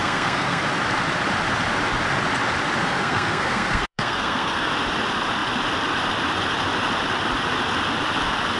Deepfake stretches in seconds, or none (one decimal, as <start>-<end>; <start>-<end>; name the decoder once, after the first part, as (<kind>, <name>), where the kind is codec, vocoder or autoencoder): 0.0-0.6 (codec, SNAC); 2.8-4.7